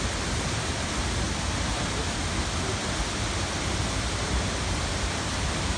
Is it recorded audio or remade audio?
recorded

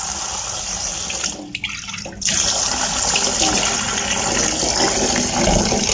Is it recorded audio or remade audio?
recorded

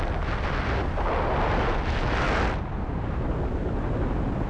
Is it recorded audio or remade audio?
recorded